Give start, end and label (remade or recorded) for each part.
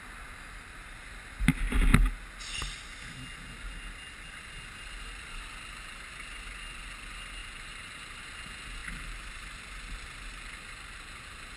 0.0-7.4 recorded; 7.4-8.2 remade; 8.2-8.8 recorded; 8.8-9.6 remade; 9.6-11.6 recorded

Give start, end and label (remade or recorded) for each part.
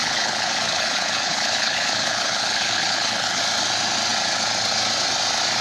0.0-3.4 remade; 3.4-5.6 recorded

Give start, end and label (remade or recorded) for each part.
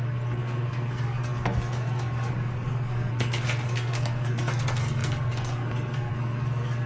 0.0-6.9 remade